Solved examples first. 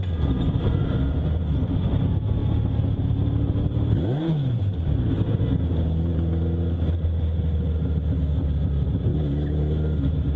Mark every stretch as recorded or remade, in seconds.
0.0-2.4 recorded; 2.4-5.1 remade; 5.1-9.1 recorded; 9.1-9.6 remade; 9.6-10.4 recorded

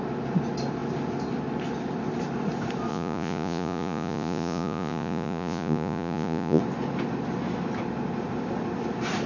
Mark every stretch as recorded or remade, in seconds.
0.0-2.9 recorded; 2.9-6.6 remade; 6.6-9.3 recorded

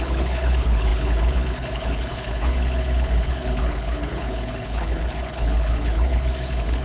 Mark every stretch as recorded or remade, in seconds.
0.0-6.8 remade

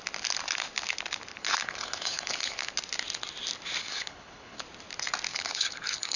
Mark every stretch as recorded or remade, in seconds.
0.0-1.3 recorded; 1.3-2.7 remade; 2.7-3.8 recorded; 3.8-4.6 remade; 4.6-5.3 recorded; 5.3-6.2 remade

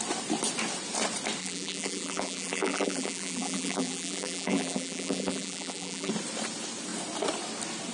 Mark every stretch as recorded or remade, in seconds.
0.0-1.4 recorded; 1.4-6.1 remade; 6.1-7.9 recorded

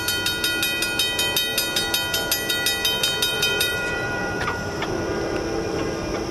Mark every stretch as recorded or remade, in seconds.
0.0-3.3 recorded; 3.3-5.0 remade; 5.0-6.3 recorded

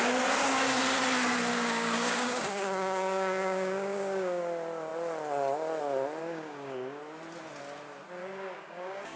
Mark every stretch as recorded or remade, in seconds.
0.0-1.5 recorded; 1.5-4.4 remade; 4.4-6.2 recorded; 6.2-7.0 remade; 7.0-8.2 recorded; 8.2-9.2 remade